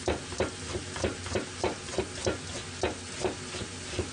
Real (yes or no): yes